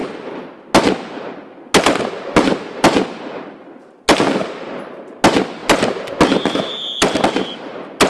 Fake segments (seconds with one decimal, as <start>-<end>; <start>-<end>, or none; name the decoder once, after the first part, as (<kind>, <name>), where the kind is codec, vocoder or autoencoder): none